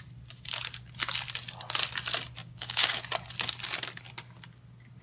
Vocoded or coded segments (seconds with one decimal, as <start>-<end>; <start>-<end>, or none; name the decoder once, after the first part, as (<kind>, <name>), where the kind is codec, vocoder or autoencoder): 2.4-3.0 (codec, DAC)